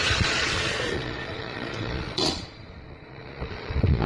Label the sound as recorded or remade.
remade